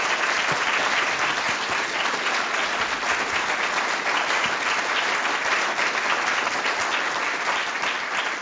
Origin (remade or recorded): recorded